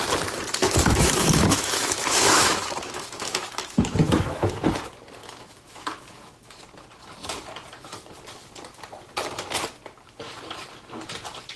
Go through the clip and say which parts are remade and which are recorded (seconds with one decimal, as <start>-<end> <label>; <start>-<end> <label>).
0.0-0.6 recorded; 0.6-4.6 remade; 4.6-5.2 recorded; 5.2-6.6 remade; 6.6-11.6 recorded